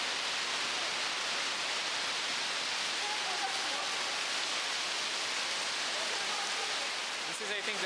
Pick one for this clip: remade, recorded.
recorded